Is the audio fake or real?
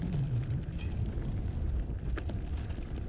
real